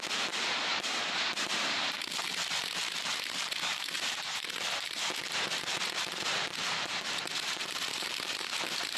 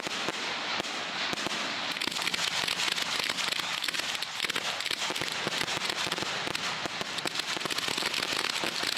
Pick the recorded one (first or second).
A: second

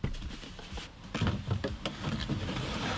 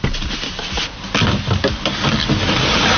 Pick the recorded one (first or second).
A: second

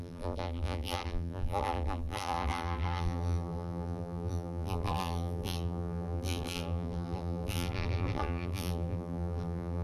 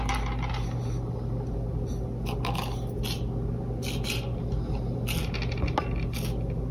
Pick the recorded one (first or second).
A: second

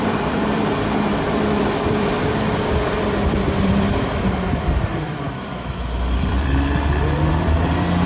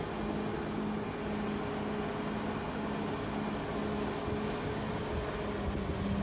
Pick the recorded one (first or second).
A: second